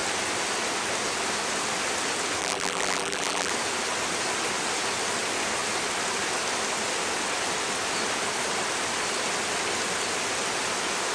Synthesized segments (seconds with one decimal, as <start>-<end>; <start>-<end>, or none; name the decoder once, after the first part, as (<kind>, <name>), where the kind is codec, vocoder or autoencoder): 2.4-3.5 (vocoder, BigVGAN v2)